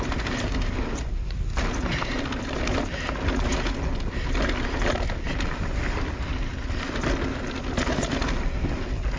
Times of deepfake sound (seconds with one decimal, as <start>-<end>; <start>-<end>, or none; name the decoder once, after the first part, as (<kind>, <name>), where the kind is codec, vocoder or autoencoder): none